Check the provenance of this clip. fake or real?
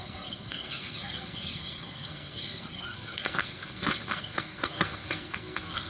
fake